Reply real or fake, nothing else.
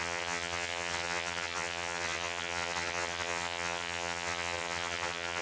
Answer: fake